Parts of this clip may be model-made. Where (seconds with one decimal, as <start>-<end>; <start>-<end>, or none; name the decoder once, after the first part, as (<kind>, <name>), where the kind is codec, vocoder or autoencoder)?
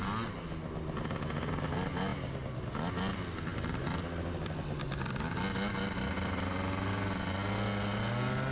none